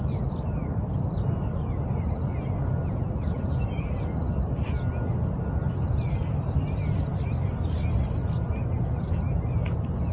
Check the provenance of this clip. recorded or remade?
recorded